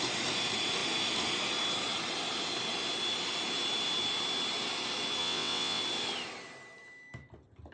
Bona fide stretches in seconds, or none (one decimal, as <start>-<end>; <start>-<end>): 0.0-5.2; 5.8-7.7